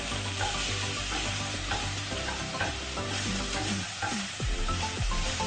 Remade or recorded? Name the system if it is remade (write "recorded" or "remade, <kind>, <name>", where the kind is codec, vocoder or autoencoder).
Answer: remade, vocoder, BigVGAN v2